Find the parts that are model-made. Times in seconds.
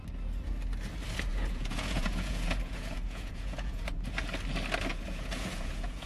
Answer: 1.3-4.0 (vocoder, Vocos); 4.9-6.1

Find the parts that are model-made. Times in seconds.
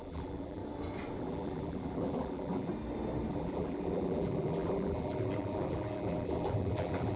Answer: 0.0-0.6 (vocoder, BigVGAN v2); 1.2-2.7; 3.3-7.2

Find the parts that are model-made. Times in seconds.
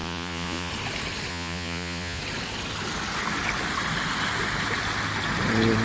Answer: 0.0-0.7 (vocoder, Vocos); 1.3-2.2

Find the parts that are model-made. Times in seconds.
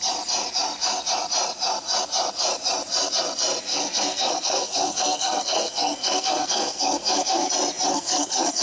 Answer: 3.7-7.5 (codec, SNAC); 7.9-8.6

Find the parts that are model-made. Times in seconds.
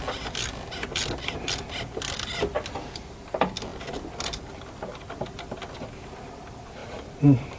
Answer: none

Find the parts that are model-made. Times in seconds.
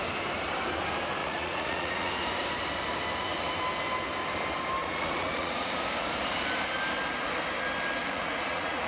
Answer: 1.2-2.1 (vocoder, Vocos); 4.8-5.7; 8.0-8.9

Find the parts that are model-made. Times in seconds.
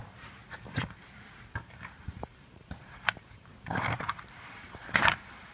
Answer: 0.0-0.4 (vocoder, BigVGAN v2); 1.0-5.5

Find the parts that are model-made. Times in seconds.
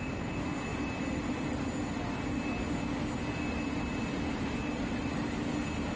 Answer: none